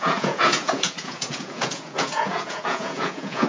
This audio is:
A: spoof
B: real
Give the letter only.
A